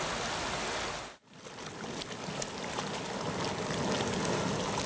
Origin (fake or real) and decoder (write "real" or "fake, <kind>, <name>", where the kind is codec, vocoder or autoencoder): real